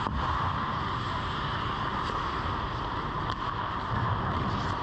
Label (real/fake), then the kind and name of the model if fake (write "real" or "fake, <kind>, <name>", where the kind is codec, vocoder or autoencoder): real